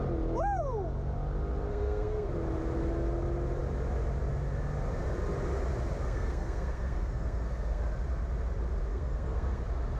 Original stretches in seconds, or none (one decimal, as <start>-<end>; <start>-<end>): 0.0-1.7; 2.3-6.0; 7.8-8.9; 9.6-10.0